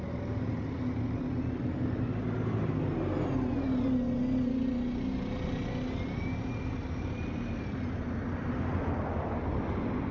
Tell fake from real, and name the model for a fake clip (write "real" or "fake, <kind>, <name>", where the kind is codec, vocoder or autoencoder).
real